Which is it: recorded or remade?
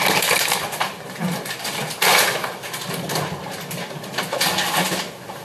recorded